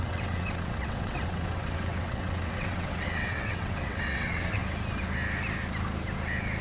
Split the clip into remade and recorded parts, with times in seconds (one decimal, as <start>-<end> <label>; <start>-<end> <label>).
0.0-4.6 remade; 4.6-6.6 recorded